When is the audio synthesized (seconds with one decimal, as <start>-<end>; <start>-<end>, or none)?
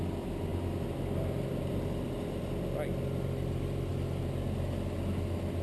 none